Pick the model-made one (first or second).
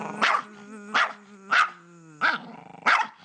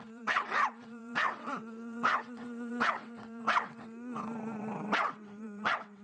second